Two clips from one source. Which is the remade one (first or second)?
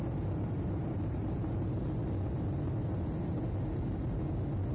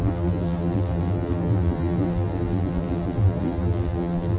second